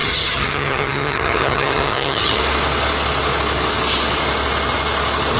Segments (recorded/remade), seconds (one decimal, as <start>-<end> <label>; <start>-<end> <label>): 0.0-2.4 remade; 2.4-5.4 recorded